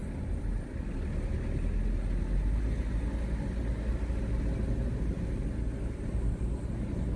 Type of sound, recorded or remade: recorded